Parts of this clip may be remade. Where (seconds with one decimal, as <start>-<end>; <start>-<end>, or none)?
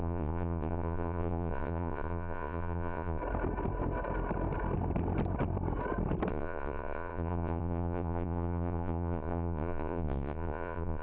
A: 0.0-3.2; 6.3-11.0